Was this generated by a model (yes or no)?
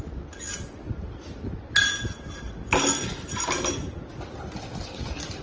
no